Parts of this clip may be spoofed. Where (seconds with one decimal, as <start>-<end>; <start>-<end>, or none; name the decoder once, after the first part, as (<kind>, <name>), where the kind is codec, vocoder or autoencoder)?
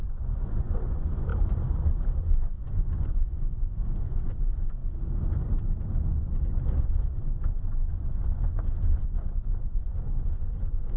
0.0-1.3 (vocoder, Vocos); 2.2-4.8; 6.1-11.0